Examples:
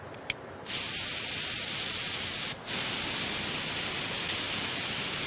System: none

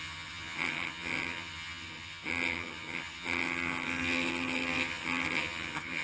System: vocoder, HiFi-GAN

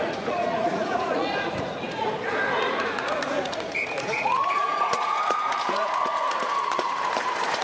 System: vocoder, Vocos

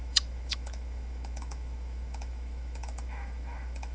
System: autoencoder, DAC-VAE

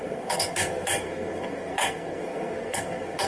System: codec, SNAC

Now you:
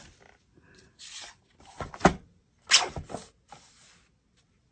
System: none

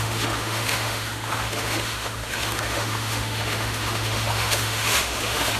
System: autoencoder, DAC-VAE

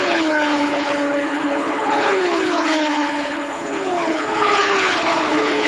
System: codec, HILCodec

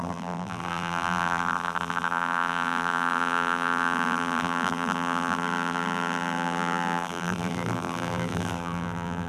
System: vocoder, BigVGAN v2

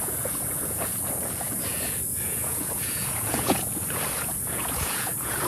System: vocoder, Vocos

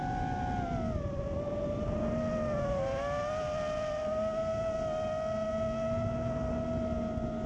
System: none